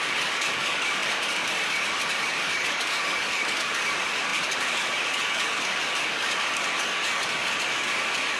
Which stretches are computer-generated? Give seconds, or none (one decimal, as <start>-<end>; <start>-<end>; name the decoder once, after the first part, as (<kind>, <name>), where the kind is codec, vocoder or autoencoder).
0.0-8.4 (codec, DAC)